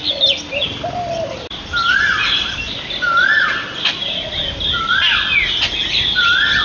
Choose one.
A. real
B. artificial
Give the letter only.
A